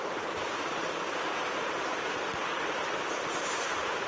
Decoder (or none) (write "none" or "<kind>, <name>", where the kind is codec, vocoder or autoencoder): vocoder, BigVGAN v2